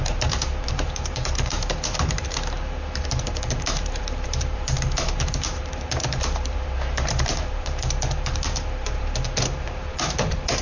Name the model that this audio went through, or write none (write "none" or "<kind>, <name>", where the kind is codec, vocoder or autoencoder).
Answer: vocoder, BigVGAN v2